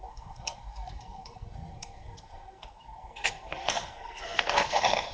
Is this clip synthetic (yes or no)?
yes